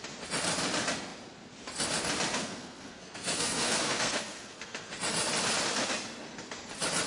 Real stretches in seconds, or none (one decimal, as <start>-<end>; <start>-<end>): 0.0-2.4; 4.9-7.1

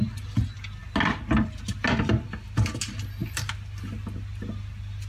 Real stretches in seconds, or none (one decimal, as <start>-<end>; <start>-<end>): 0.0-5.1